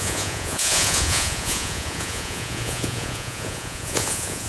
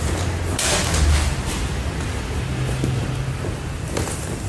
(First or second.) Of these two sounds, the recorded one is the second